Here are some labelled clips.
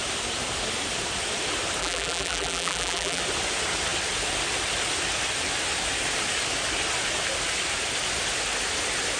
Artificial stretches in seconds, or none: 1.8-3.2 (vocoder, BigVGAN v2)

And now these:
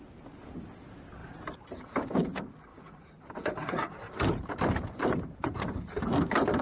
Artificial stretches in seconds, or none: 1.2-2.0 (vocoder, BigVGAN v2); 2.7-6.0

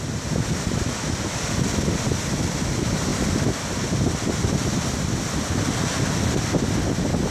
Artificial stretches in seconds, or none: none

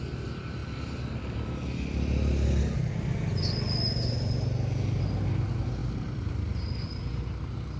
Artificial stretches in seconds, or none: 5.8-7.0 (vocoder, BigVGAN v2)